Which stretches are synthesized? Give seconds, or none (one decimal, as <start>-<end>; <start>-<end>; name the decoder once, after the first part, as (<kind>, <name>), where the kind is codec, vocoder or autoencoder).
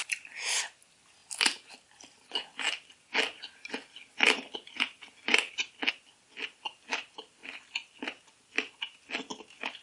none